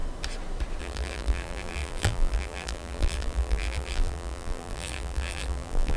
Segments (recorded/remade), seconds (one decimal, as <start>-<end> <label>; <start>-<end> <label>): 0.0-0.8 recorded; 0.8-6.0 remade